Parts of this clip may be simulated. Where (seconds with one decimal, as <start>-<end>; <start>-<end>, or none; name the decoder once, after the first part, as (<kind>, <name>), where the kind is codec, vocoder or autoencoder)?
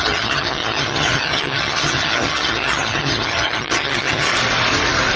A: 0.0-4.3 (vocoder, HiFi-GAN)